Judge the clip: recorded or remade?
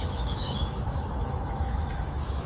remade